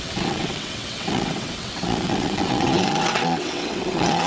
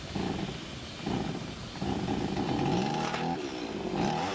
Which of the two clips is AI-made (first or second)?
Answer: first